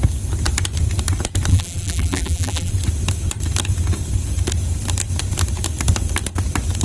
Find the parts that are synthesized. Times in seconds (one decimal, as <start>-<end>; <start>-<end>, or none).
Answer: 1.5-2.7

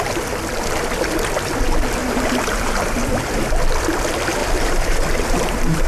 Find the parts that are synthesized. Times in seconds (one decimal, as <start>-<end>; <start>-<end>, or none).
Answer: 2.0-3.6; 4.4-5.9

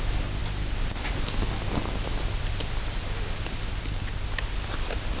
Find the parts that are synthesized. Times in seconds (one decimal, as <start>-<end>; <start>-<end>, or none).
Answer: none

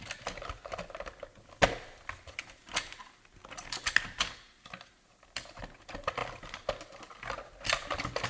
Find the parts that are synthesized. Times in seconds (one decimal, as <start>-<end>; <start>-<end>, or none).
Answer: none

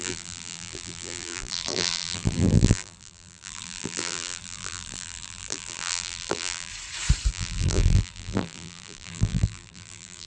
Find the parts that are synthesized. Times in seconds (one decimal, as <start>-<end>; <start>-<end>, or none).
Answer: 0.0-6.7; 7.3-10.3

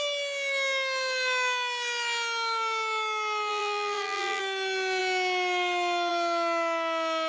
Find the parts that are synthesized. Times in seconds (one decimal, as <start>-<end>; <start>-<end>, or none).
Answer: 3.5-4.4